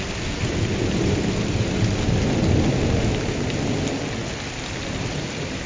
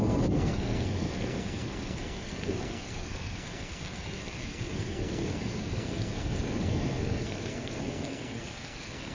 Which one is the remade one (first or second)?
second